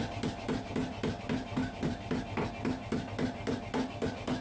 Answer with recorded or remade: recorded